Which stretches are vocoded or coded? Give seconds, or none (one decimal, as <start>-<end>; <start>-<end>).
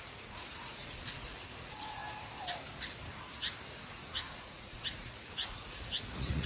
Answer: 0.0-2.0; 3.8-6.5